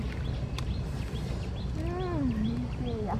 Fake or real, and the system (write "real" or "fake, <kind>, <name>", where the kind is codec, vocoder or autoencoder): real